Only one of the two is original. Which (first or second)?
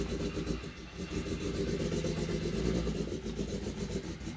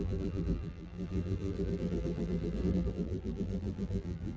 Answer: first